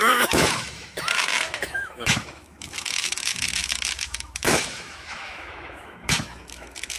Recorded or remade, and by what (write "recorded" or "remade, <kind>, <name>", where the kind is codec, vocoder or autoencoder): remade, autoencoder, DAC-VAE